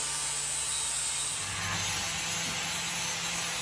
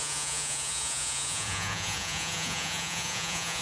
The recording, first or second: first